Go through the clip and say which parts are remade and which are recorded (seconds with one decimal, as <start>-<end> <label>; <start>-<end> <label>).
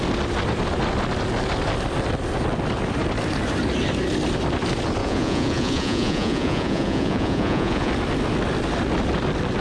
0.0-5.0 recorded; 5.0-7.9 remade; 7.9-9.6 recorded